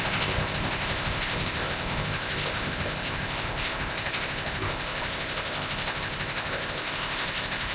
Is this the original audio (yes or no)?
no